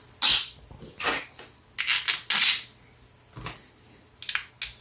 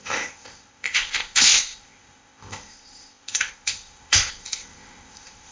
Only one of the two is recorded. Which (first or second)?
first